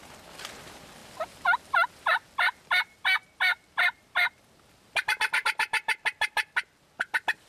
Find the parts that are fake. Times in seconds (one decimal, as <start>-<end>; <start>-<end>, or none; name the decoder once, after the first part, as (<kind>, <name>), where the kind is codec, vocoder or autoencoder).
none